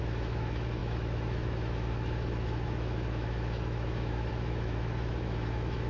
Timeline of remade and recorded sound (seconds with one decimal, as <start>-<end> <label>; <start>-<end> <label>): 0.0-5.9 remade